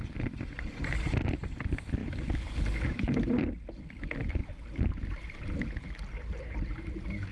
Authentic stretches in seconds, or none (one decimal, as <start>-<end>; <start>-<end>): 0.0-7.3